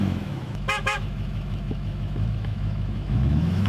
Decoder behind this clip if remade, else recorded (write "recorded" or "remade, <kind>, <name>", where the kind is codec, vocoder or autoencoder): remade, autoencoder, DAC-VAE